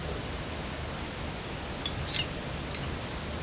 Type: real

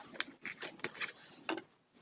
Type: real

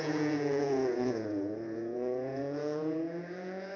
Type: fake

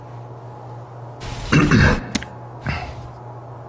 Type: real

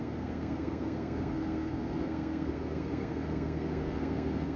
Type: fake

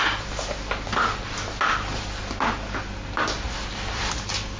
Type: real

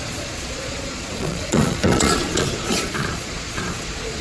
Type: fake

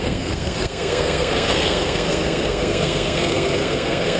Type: fake